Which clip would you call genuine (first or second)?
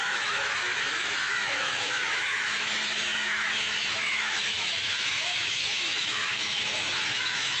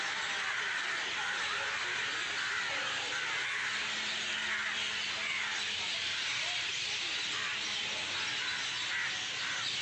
second